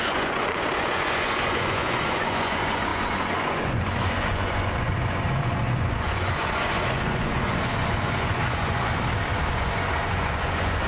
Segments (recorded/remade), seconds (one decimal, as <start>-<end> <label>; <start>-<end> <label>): 0.0-8.9 remade; 8.9-9.5 recorded; 9.5-10.9 remade